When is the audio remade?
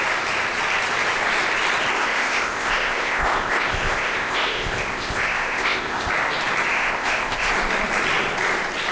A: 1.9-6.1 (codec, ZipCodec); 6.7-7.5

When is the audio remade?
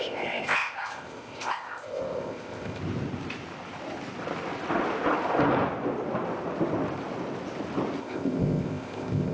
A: 0.0-2.8 (codec, ZipCodec); 8.0-9.3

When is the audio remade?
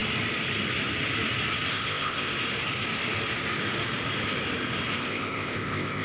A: 1.7-2.3 (codec, ZipCodec); 5.0-6.0